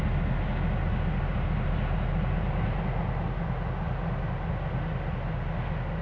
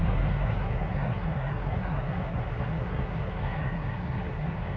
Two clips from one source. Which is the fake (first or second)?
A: second